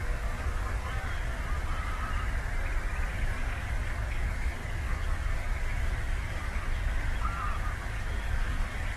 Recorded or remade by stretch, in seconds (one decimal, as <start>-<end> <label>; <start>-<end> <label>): 0.0-1.3 remade; 1.3-3.1 recorded; 3.1-7.1 remade; 7.1-7.9 recorded; 7.9-9.0 remade